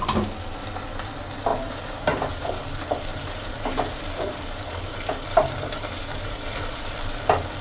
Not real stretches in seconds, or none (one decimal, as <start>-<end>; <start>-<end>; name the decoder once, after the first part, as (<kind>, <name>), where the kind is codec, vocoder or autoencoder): 1.5-2.3 (vocoder, BigVGAN v2); 3.1-6.0